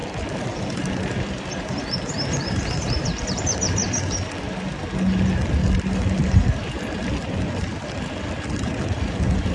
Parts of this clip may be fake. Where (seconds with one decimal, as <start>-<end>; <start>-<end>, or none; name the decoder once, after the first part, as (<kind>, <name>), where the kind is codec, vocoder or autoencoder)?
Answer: 0.0-1.5 (vocoder, BigVGAN v2)